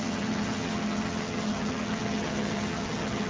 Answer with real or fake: fake